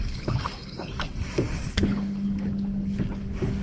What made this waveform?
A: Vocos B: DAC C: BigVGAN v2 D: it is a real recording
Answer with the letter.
B